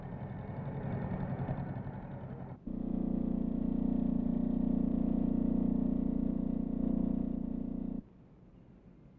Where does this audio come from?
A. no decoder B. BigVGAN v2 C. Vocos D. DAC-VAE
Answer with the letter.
A